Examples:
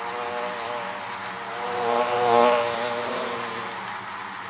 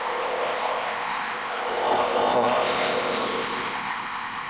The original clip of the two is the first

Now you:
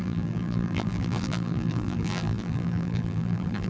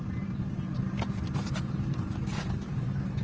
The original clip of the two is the second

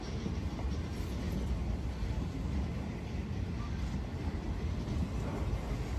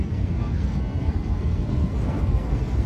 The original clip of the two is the first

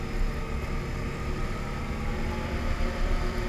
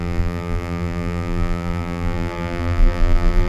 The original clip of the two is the first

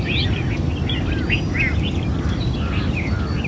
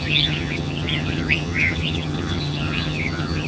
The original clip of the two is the first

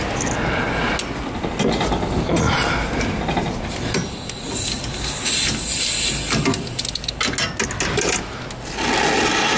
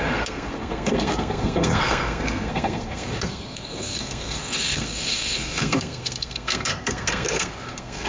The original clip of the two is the first